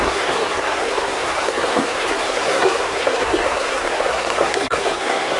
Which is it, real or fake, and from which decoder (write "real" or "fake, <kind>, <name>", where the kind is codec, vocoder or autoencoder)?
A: fake, codec, SNAC